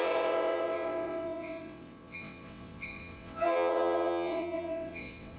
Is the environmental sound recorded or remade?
remade